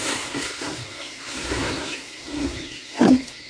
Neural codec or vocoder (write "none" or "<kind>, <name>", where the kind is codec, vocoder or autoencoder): codec, SNAC